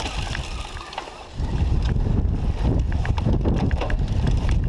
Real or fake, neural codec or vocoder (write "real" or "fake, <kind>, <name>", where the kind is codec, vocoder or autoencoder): real